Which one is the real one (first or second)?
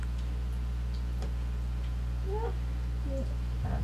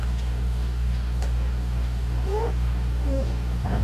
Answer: first